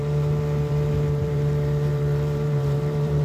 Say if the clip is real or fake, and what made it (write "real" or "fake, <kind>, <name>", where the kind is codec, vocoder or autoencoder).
fake, vocoder, BigVGAN v2